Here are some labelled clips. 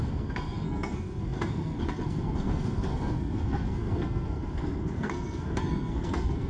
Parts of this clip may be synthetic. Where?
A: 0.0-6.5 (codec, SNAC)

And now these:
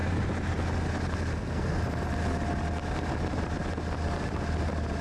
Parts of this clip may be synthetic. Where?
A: 1.3-1.8 (codec, SNAC)

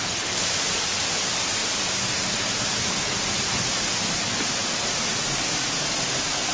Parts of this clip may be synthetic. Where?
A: none

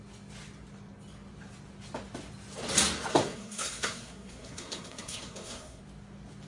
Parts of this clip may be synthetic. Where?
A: 3.1-5.8 (codec, SNAC)

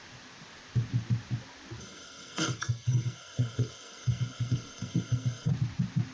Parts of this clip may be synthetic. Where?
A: 1.8-5.5 (codec, SNAC)

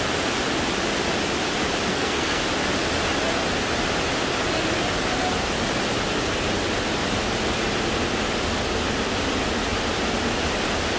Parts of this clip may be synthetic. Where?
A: 1.9-2.4 (codec, SNAC)